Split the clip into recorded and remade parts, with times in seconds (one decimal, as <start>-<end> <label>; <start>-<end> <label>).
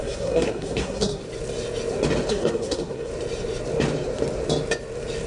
0.0-1.2 remade; 1.2-2.3 recorded; 2.3-3.1 remade; 3.1-5.3 recorded